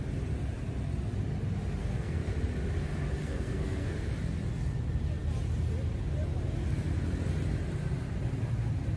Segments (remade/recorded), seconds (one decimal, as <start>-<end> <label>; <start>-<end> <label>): 0.0-1.8 recorded; 1.8-2.3 remade; 2.3-3.2 recorded; 3.2-4.1 remade; 4.1-9.0 recorded